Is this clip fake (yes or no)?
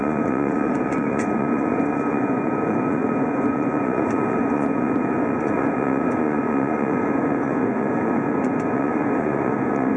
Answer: yes